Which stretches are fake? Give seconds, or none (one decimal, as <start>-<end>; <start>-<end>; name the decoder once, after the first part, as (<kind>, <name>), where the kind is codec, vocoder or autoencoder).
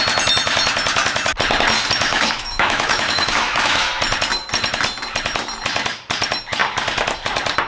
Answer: 2.1-3.9 (autoencoder, DAC-VAE)